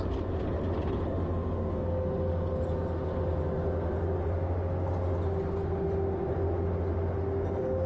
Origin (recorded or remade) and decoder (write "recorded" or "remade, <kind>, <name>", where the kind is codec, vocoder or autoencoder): recorded